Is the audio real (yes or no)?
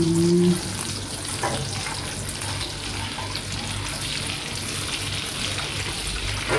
yes